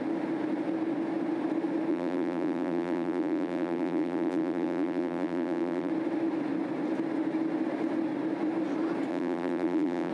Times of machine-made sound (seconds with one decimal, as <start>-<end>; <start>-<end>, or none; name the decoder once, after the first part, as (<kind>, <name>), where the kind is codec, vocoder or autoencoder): 1.9-5.9 (vocoder, BigVGAN v2); 9.1-10.1